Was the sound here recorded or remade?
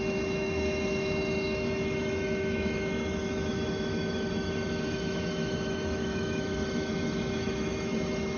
remade